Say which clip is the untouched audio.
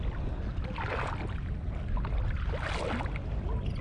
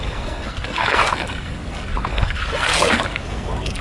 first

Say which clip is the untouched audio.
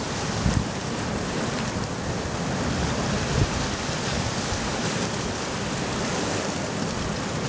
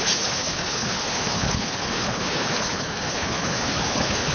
first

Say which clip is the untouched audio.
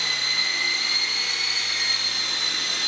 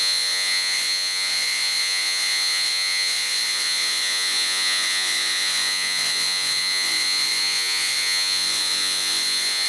first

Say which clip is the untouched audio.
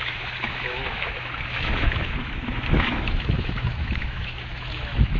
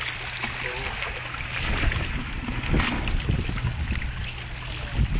second